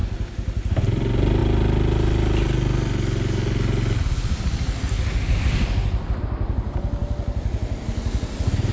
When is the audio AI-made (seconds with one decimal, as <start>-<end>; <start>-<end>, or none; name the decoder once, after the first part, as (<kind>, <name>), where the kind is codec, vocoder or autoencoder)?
none